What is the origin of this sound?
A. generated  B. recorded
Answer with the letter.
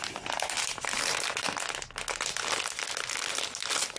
B